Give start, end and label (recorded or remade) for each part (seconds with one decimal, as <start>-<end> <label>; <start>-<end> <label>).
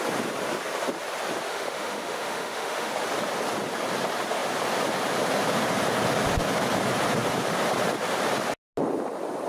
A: 0.0-1.5 recorded; 1.5-2.9 remade; 2.9-9.5 recorded